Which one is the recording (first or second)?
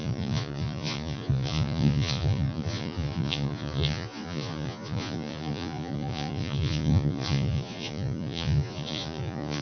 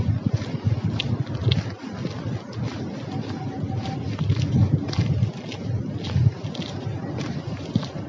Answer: second